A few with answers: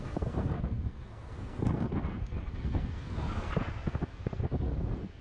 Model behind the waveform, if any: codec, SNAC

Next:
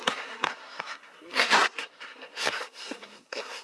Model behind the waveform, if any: codec, SNAC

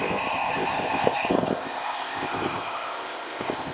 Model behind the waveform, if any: codec, ZipCodec